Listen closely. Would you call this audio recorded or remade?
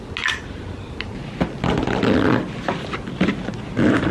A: recorded